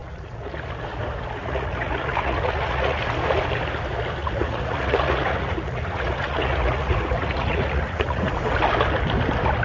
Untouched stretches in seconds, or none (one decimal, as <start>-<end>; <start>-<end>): 0.5-1.4; 3.0-4.2; 8.3-9.6